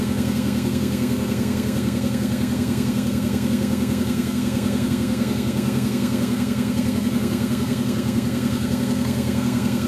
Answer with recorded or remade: remade